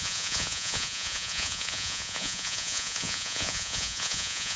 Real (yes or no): no